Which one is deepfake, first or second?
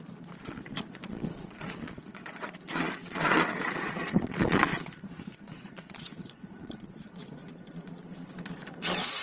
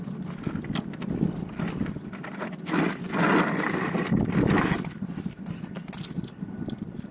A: first